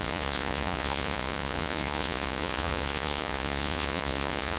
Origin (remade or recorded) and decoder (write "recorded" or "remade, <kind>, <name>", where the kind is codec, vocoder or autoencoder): remade, vocoder, Vocos